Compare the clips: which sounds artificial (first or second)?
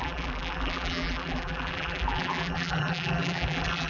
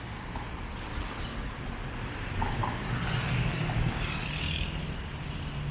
first